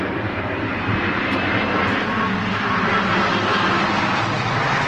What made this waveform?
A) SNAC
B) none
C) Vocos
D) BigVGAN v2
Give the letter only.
B